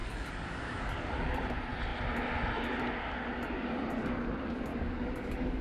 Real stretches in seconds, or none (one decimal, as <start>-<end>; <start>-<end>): 1.1-4.7